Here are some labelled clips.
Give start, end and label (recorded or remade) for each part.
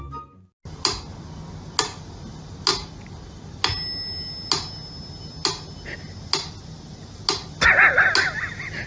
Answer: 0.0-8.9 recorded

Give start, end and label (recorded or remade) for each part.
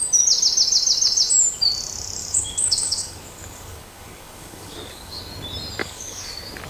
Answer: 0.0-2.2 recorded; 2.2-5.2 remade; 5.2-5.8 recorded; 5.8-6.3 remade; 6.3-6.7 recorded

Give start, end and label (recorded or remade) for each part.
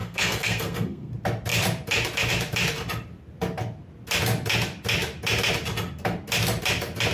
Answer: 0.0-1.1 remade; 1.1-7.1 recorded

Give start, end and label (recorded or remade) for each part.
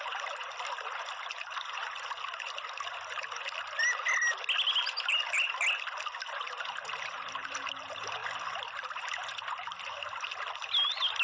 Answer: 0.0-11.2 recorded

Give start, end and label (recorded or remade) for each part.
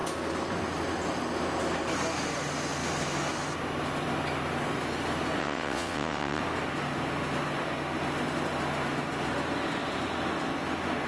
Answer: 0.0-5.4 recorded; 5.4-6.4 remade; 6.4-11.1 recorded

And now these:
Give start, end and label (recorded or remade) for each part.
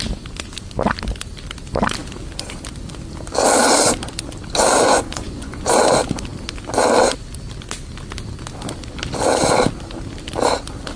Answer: 0.0-4.9 recorded; 4.9-5.8 remade; 5.8-11.0 recorded